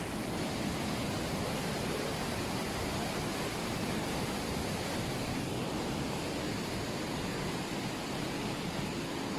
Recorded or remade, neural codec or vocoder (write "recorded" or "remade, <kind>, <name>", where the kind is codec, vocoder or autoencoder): recorded